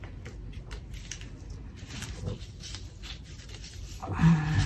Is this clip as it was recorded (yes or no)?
yes